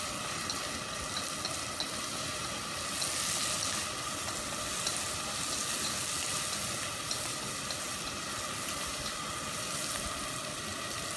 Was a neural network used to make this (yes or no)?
no